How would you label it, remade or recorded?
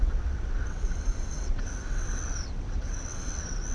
remade